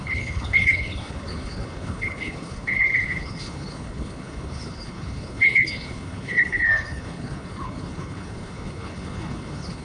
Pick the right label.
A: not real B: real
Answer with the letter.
A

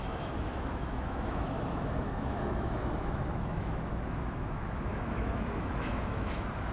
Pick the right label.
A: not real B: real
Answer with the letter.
A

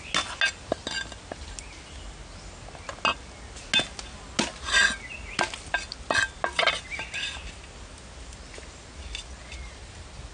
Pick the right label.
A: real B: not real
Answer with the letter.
A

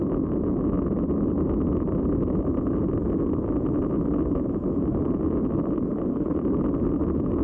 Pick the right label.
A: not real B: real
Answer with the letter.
B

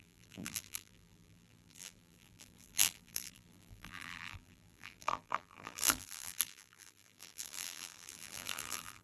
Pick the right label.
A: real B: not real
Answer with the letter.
B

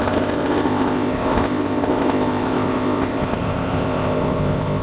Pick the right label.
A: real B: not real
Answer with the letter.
B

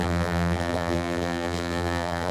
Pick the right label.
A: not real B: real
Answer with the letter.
A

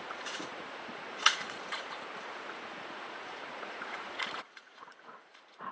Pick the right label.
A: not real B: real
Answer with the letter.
A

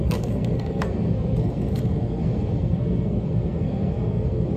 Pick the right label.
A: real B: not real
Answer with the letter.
B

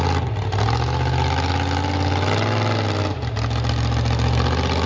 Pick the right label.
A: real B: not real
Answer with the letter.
A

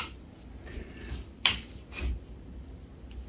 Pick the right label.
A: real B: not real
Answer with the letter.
B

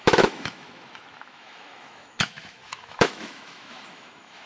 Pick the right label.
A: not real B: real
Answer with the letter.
A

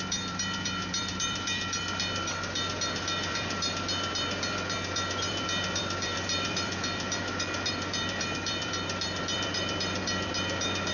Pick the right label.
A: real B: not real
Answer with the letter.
B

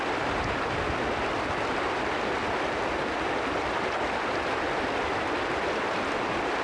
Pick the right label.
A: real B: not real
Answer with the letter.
A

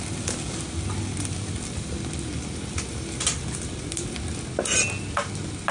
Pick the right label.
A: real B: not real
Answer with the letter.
A